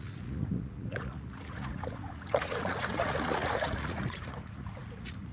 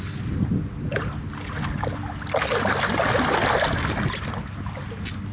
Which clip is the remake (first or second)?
first